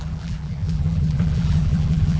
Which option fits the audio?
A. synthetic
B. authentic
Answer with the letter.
A